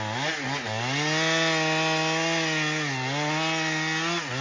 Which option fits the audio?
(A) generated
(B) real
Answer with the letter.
B